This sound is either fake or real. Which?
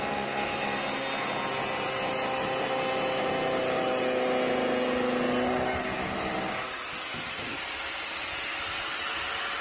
real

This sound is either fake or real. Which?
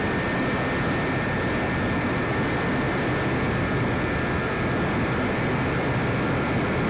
real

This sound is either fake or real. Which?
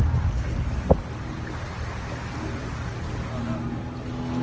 real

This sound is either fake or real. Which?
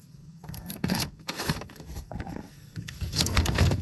fake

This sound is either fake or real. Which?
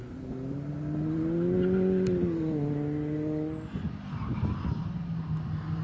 real